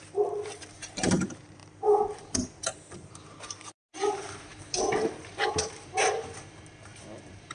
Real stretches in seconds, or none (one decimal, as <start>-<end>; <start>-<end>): none